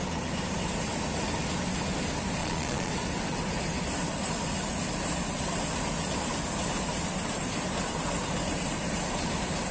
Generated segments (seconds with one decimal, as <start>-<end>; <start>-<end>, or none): 2.4-2.9